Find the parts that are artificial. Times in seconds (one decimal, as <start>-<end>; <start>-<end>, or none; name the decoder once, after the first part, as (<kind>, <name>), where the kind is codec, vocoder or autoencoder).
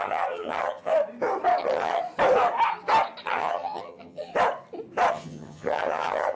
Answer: 0.0-0.9 (vocoder, HiFi-GAN); 1.6-2.0; 3.2-4.3; 5.1-6.3